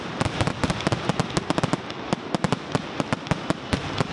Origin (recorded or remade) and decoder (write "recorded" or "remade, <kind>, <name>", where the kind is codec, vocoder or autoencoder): recorded